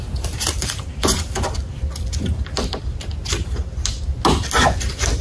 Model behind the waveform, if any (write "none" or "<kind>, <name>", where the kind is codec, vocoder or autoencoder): none